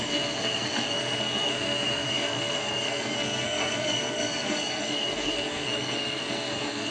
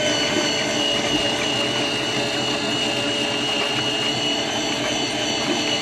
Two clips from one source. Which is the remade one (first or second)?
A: first